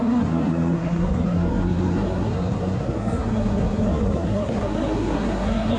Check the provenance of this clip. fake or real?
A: fake